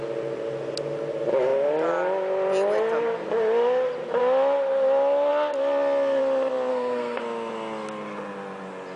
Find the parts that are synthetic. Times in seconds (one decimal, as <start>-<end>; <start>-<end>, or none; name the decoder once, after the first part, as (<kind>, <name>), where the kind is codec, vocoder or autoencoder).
6.7-7.2 (codec, SNAC)

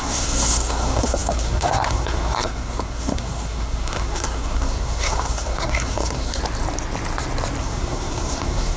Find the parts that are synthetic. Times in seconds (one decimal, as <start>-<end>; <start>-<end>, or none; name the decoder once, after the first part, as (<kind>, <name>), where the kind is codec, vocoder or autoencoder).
0.0-6.4 (codec, SNAC); 7.6-8.8